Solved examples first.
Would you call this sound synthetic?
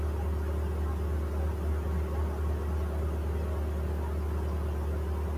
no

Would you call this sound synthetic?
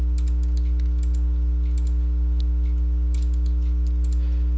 no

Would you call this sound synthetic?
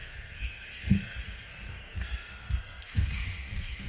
yes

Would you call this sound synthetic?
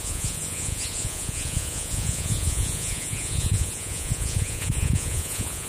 yes